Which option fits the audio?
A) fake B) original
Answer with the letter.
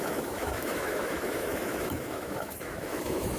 A